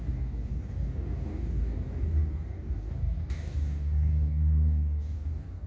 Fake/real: fake